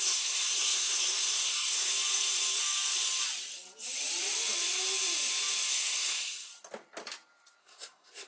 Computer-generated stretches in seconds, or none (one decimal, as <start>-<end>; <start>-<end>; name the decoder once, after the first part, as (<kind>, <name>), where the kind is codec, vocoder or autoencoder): 0.0-1.9 (codec, SNAC); 5.7-6.5; 7.6-8.3